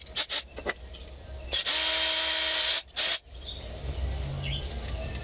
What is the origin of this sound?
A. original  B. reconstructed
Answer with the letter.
A